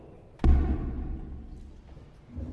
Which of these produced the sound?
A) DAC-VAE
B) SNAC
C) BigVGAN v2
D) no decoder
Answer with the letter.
D